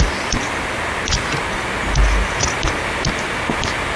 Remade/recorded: recorded